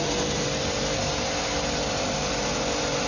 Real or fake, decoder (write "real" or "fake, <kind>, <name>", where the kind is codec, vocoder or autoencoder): real